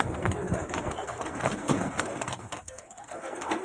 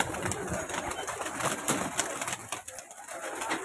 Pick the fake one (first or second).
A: first